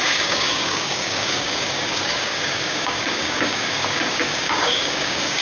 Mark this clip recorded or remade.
remade